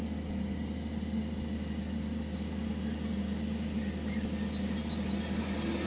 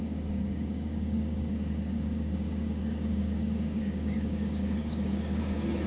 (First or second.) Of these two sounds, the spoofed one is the second